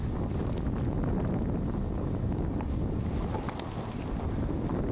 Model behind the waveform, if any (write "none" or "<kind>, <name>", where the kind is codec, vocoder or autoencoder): none